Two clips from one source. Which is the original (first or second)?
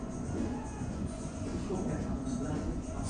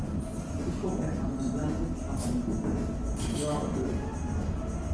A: second